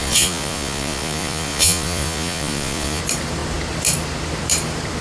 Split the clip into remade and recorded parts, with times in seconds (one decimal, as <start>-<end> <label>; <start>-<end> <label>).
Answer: 0.0-3.0 remade; 3.0-5.0 recorded